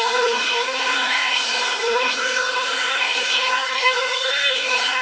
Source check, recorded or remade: remade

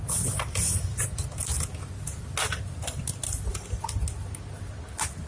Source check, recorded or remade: recorded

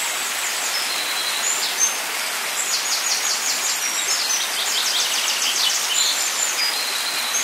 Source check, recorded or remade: recorded